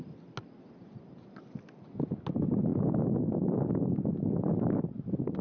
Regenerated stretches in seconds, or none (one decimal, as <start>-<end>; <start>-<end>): none